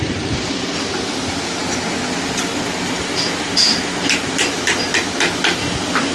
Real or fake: real